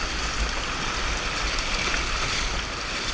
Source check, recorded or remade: recorded